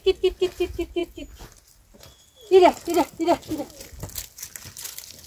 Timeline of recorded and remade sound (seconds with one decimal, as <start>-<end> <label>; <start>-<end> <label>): 0.0-5.3 recorded